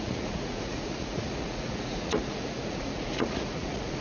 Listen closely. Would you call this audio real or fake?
fake